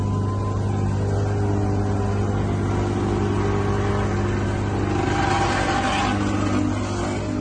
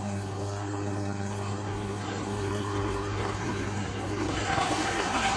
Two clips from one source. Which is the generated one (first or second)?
second